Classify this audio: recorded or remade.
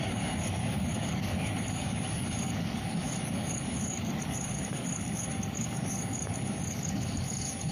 remade